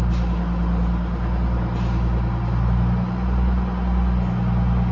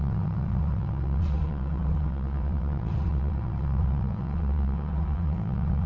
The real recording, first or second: first